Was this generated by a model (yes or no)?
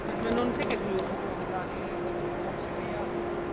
no